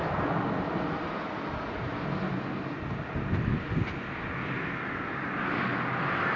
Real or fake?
real